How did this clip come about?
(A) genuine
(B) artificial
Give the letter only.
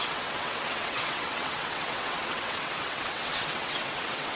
B